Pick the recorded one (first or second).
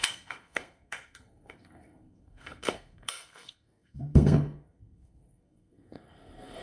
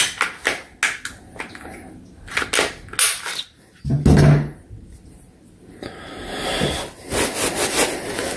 second